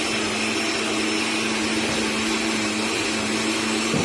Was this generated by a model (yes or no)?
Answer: no